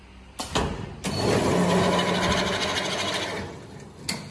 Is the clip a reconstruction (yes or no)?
no